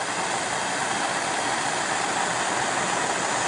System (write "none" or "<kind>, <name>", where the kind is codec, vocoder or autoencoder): none